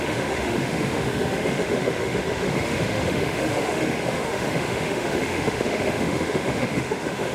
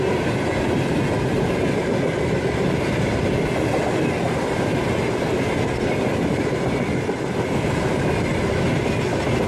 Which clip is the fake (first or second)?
first